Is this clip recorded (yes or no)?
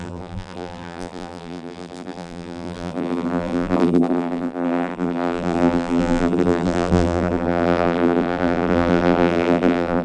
no